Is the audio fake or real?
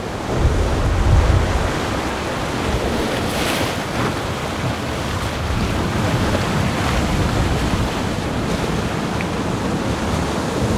real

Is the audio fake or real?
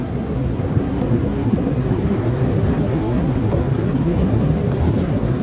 fake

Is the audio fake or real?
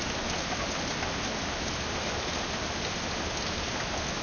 real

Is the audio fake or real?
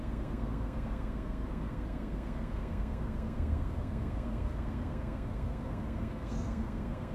fake